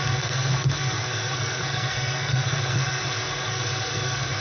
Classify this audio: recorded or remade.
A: remade